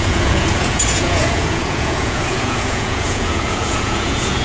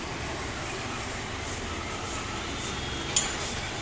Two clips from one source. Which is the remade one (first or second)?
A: first